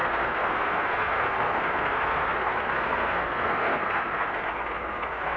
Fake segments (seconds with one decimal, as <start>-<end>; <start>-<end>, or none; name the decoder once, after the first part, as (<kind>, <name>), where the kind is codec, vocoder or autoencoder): 0.0-5.4 (codec, SNAC)